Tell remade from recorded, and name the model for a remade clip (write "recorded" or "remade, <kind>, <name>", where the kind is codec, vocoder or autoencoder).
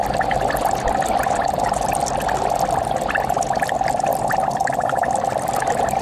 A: recorded